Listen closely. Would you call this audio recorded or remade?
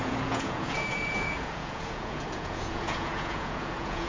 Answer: remade